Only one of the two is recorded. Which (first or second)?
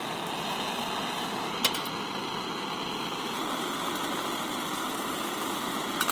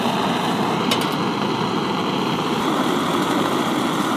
first